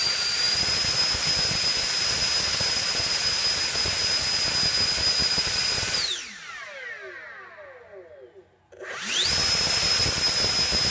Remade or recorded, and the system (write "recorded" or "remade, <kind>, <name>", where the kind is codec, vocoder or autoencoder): recorded